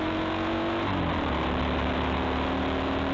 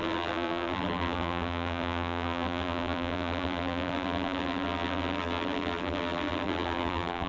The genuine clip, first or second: first